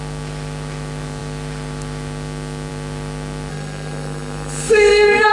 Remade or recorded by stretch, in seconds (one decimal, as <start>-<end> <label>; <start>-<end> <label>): 0.0-3.5 recorded; 3.5-5.3 remade